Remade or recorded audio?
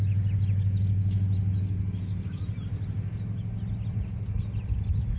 recorded